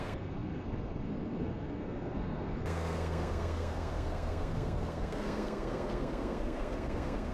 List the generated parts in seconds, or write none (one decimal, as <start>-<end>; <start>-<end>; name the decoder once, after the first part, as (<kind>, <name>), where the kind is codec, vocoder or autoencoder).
0.0-7.3 (codec, SNAC)